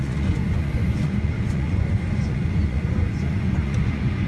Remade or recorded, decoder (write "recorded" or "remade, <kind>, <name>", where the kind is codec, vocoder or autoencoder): remade, vocoder, Vocos